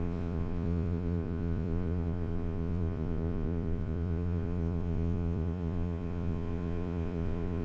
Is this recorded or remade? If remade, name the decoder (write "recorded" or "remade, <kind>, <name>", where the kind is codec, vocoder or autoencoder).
remade, vocoder, Vocos